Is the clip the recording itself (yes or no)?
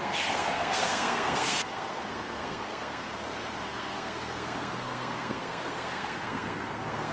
no